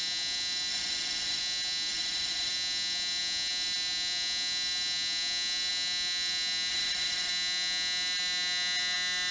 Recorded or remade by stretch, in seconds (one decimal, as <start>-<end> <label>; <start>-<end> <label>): 0.0-0.7 recorded; 0.7-1.4 remade; 1.4-1.9 recorded; 1.9-2.5 remade; 2.5-6.7 recorded; 6.7-7.3 remade; 7.3-9.3 recorded